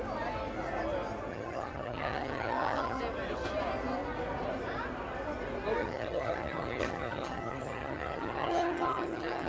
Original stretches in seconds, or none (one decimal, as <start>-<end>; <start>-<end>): 0.0-1.3; 3.0-5.8